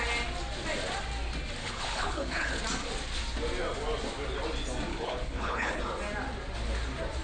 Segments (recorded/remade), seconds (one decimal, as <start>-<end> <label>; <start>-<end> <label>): 0.0-1.6 recorded; 1.6-2.6 remade; 2.6-4.9 recorded; 4.9-5.8 remade; 5.8-7.2 recorded